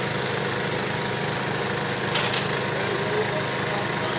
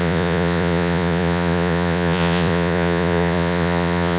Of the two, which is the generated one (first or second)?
second